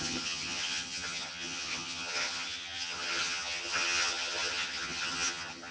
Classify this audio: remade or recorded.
remade